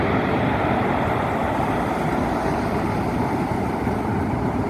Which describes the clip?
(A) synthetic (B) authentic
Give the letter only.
A